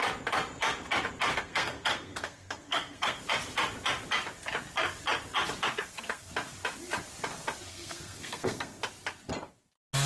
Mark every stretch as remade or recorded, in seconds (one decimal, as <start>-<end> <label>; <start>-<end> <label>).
0.0-1.3 recorded; 1.3-3.2 remade; 3.2-5.7 recorded; 5.7-6.3 remade; 6.3-7.7 recorded; 7.7-8.8 remade; 8.8-10.1 recorded

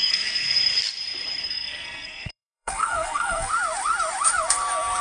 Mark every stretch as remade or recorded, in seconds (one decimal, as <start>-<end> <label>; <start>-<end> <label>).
0.0-0.6 remade; 0.6-1.4 recorded; 1.4-3.5 remade; 3.5-5.0 recorded

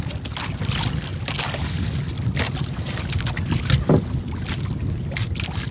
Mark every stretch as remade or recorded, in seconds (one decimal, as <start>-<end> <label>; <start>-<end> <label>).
0.0-5.7 recorded

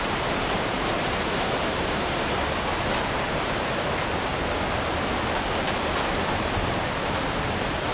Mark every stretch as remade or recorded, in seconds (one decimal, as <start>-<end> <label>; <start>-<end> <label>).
0.0-4.3 remade; 4.3-6.1 recorded; 6.1-7.9 remade

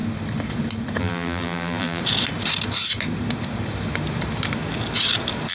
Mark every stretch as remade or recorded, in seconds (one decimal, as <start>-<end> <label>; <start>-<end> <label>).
0.0-1.0 recorded; 1.0-2.0 remade; 2.0-5.5 recorded

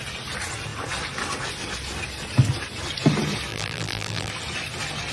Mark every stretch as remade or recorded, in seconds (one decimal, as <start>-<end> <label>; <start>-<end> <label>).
0.0-3.5 recorded; 3.5-4.3 remade; 4.3-5.1 recorded

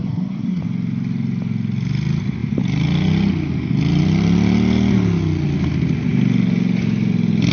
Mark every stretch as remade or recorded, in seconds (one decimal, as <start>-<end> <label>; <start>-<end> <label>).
0.0-0.6 remade; 0.6-7.5 recorded